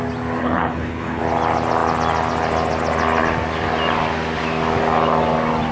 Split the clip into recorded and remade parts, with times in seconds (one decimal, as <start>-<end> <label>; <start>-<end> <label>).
0.0-0.4 recorded; 0.4-1.2 remade; 1.2-5.7 recorded